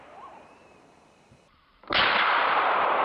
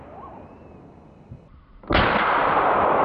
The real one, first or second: second